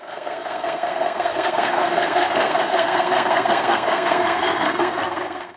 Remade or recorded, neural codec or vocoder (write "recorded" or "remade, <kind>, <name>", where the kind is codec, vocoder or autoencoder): remade, codec, SNAC